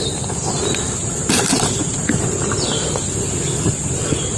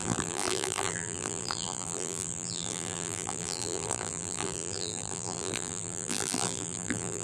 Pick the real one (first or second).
first